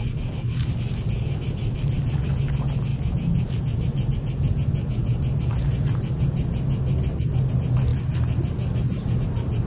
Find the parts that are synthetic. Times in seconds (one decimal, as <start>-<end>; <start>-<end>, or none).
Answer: none